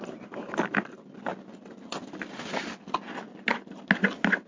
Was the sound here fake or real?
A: real